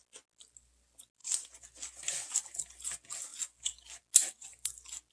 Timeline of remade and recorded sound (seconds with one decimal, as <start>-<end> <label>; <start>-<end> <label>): 0.0-5.1 recorded

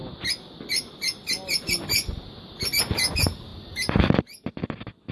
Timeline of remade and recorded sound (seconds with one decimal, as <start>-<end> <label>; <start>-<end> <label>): 0.0-5.1 recorded